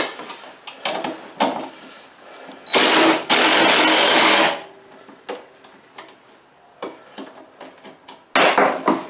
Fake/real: real